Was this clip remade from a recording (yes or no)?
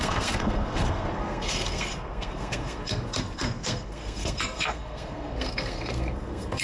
yes